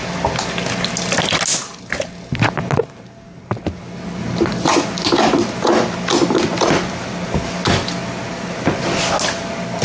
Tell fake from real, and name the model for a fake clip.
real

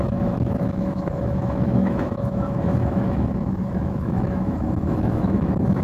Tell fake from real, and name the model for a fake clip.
fake, autoencoder, DAC-VAE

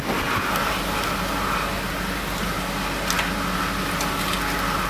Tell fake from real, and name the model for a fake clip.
real